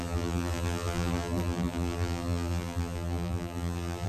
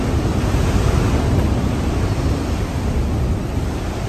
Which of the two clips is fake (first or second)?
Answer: first